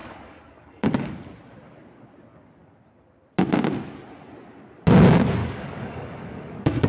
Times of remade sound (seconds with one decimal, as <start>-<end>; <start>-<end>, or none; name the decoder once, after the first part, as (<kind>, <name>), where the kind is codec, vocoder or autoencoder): 0.0-1.3 (codec, DAC); 5.4-6.9